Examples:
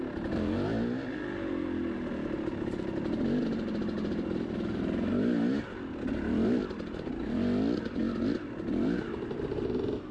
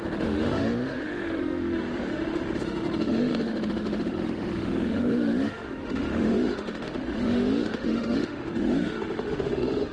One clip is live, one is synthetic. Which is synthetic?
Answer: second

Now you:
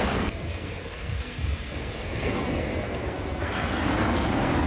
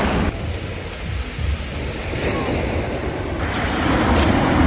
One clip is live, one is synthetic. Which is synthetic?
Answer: first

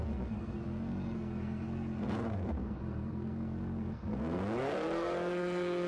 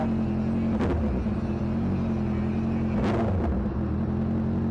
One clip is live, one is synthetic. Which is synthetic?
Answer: first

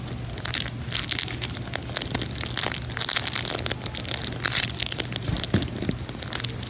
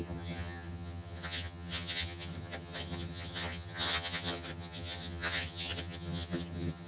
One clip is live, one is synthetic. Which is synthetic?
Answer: second